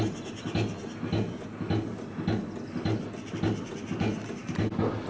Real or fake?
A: real